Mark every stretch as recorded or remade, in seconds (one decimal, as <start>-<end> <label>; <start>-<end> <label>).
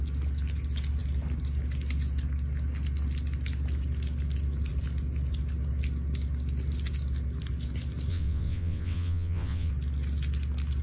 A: 0.0-8.1 recorded; 8.1-9.7 remade; 9.7-10.8 recorded